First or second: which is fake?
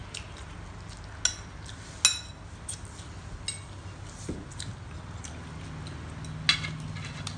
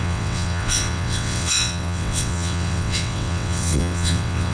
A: second